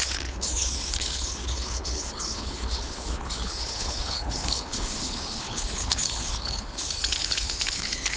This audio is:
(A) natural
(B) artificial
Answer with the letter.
B